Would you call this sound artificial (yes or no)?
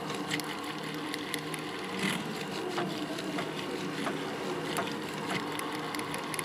no